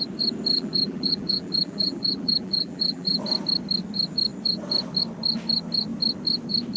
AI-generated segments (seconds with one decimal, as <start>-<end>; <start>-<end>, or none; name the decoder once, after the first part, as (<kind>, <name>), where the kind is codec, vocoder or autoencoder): 0.5-3.2 (vocoder, BigVGAN v2)